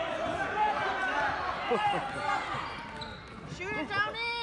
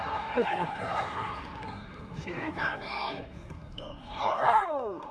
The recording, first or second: first